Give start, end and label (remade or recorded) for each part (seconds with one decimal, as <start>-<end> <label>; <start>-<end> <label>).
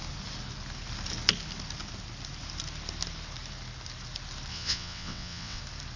0.0-4.5 recorded; 4.5-5.6 remade; 5.6-6.0 recorded